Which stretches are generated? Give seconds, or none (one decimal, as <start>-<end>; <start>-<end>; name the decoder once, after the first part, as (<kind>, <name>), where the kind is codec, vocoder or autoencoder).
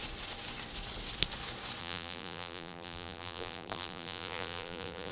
1.8-5.1 (vocoder, BigVGAN v2)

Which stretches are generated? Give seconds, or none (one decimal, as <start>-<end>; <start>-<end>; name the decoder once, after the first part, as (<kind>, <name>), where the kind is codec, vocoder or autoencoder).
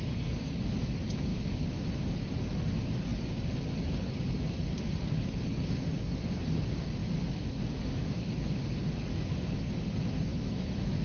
1.3-1.9 (autoencoder, DAC-VAE); 7.0-8.6; 10.3-11.0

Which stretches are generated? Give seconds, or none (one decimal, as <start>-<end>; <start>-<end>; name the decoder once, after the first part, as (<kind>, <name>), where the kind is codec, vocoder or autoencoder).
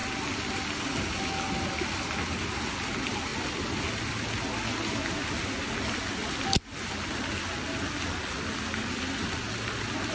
none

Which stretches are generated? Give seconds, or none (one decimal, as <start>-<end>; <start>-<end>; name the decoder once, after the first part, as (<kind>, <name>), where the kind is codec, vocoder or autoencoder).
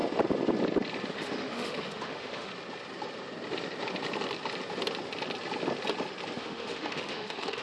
1.1-2.5 (autoencoder, DAC-VAE); 6.4-7.6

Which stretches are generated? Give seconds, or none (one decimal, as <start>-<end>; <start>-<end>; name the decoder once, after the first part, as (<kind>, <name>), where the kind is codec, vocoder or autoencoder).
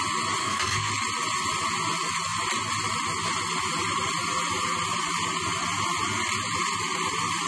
0.4-0.9 (codec, SNAC)